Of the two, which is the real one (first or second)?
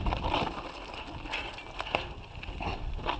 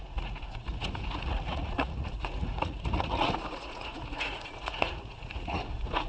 first